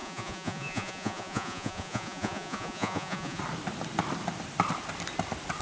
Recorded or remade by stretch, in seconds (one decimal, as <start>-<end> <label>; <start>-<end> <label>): 0.0-3.4 remade; 3.4-5.6 recorded